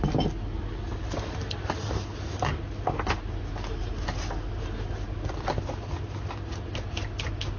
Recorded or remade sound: recorded